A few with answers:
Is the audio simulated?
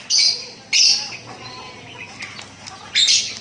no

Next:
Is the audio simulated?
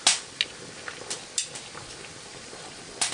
no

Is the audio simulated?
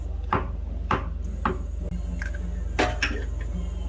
no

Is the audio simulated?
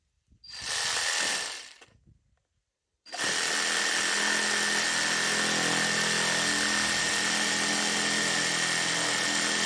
no